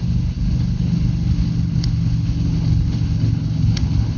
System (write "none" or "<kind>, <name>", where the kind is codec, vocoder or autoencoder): codec, HILCodec